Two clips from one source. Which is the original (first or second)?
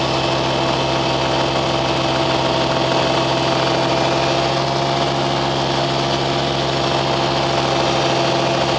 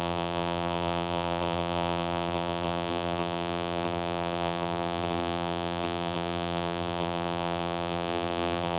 first